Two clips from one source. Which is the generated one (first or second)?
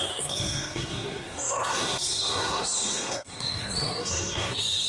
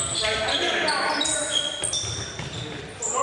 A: first